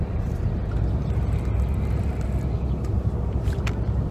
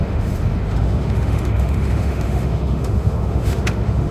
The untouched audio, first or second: first